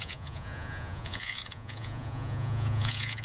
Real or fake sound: fake